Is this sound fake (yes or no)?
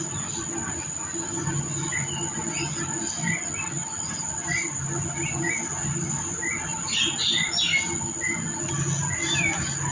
no